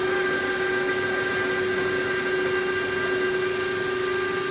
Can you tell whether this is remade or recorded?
recorded